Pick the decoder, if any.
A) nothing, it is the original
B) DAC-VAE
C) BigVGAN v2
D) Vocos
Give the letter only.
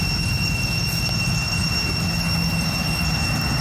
A